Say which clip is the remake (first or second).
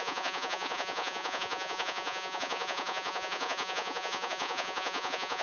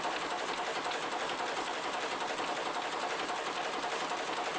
first